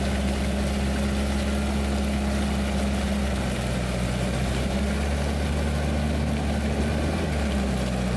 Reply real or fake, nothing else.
real